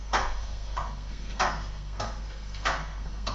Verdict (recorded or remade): remade